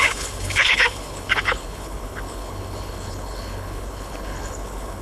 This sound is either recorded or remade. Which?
remade